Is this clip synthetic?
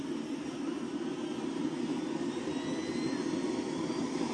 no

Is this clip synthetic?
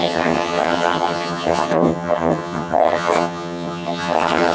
yes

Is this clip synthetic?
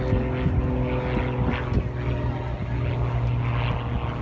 no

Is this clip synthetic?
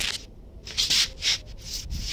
no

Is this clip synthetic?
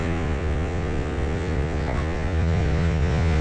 yes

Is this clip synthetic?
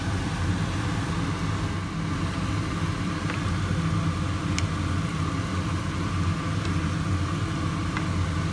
no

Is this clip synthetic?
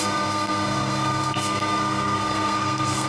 yes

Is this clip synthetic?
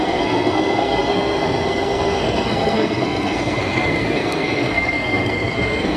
yes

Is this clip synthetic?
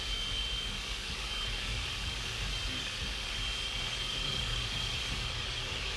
yes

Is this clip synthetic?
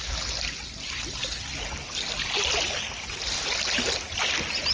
no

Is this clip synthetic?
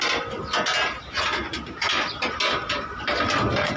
no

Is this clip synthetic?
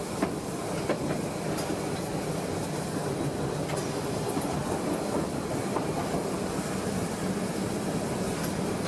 no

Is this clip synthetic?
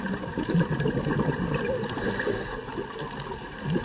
no